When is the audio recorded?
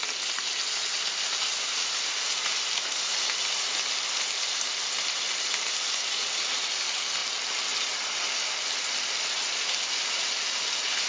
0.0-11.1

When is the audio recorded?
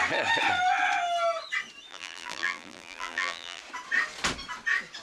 0.0-1.9; 3.6-5.0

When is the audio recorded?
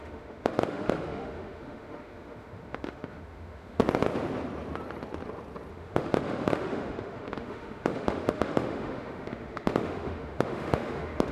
3.8-5.7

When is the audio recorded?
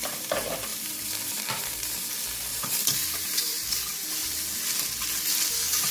0.0-0.7; 2.0-2.5; 3.7-5.9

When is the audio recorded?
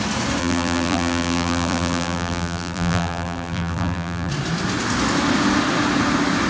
0.0-0.4; 4.3-6.5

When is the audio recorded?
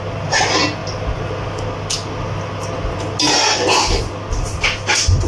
0.0-5.3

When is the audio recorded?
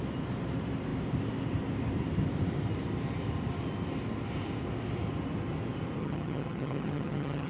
0.0-6.0